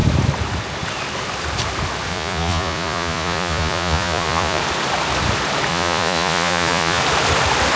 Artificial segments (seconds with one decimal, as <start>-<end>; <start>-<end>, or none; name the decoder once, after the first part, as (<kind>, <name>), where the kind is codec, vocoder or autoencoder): 2.1-4.6 (vocoder, Vocos); 5.7-7.0